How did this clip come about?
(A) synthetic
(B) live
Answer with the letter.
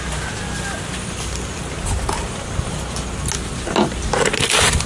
B